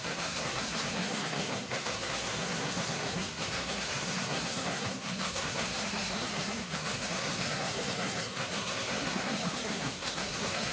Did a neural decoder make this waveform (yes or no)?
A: yes